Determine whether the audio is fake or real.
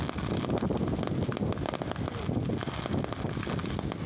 real